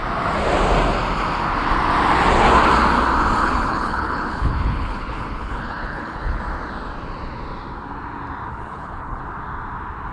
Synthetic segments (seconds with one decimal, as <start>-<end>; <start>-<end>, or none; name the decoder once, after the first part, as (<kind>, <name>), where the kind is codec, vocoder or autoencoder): 3.4-6.4 (codec, HILCodec); 8.5-9.2